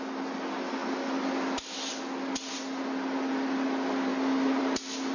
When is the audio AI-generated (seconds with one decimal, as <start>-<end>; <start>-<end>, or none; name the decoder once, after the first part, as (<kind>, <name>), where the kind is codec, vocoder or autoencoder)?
none